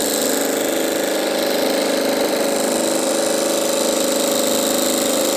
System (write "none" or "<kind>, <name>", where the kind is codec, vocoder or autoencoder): none